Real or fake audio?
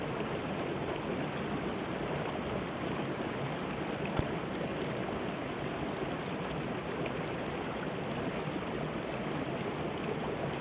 real